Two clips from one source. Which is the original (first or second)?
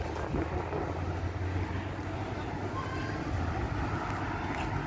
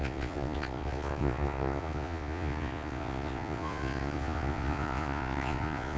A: first